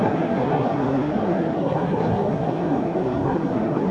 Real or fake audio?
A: fake